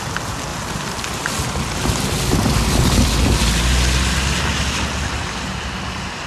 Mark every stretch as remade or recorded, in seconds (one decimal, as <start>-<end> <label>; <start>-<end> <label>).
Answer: 0.0-0.5 recorded; 0.5-3.4 remade; 3.4-6.3 recorded